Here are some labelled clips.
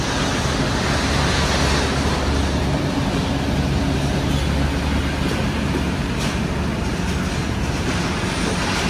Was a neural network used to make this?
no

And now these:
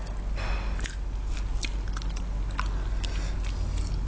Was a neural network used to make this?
no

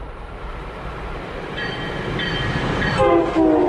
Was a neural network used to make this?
no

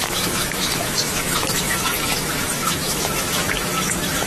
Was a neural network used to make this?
yes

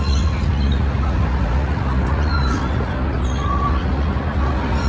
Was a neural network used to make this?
yes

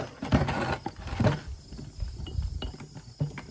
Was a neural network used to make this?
no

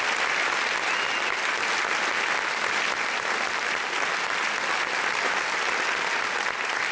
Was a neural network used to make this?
no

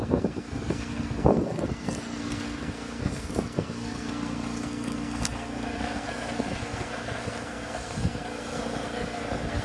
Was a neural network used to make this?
yes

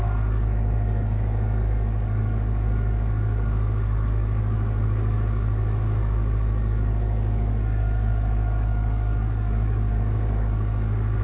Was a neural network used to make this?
yes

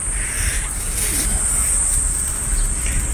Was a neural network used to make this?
no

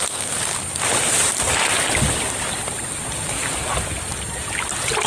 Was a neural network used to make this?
no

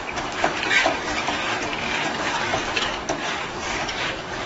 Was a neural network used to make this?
yes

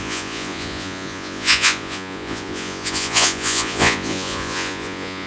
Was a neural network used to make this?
yes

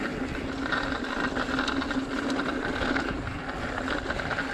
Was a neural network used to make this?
no